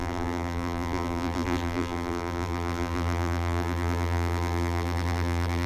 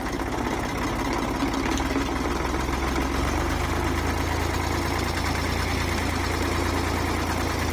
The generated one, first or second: first